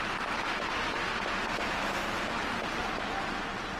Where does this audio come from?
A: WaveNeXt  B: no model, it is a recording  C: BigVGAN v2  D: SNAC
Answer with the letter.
B